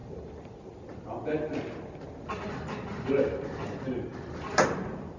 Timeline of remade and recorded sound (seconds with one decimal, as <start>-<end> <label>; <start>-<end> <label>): 0.0-5.2 recorded